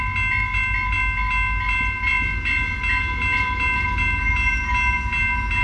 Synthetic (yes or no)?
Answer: no